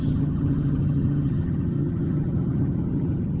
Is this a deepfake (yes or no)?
yes